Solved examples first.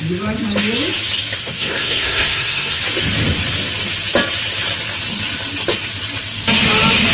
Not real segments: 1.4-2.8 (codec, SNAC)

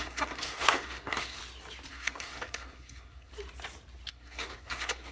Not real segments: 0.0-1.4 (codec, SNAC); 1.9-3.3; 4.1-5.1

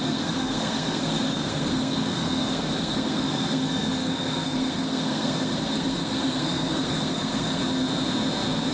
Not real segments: 0.0-7.6 (codec, SNAC)

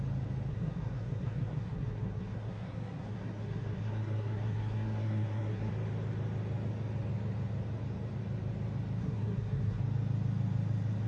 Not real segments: 0.5-5.7 (codec, SNAC); 9.0-9.8

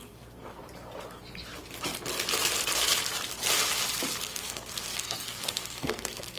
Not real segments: 0.0-0.6 (codec, SNAC); 4.2-6.4

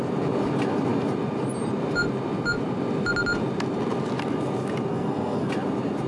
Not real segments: 4.9-5.5 (codec, SNAC)

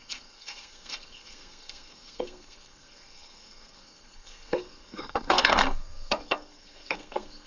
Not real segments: 0.0-7.5 (codec, SNAC)

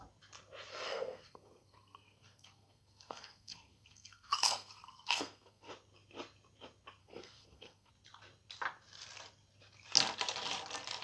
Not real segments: 0.7-5.7 (codec, SNAC); 7.0-7.9